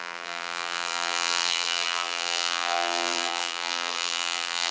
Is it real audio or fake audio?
fake